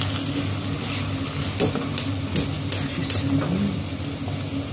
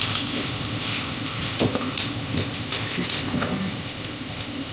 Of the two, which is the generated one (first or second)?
second